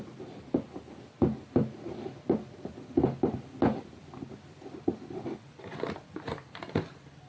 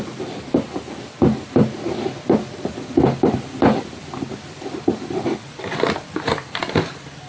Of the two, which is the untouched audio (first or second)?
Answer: first